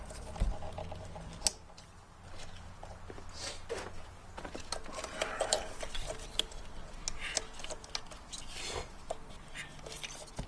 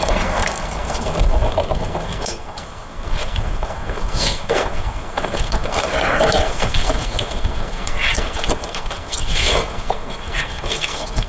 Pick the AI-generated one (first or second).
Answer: second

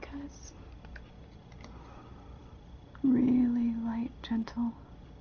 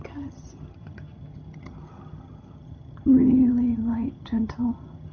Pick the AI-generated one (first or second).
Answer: second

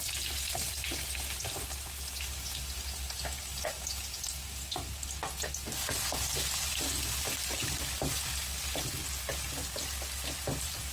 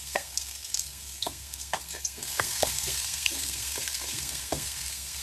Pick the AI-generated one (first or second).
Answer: second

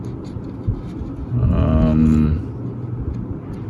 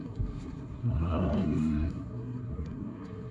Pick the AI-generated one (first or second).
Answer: second